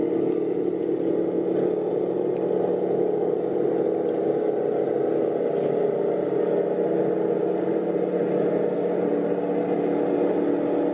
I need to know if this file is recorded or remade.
recorded